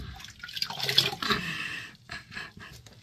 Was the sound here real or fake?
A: real